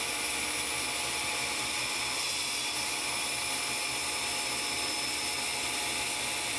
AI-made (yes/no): no